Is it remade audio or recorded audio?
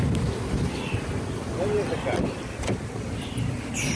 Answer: recorded